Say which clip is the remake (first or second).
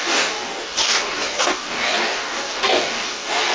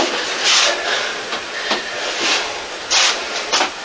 first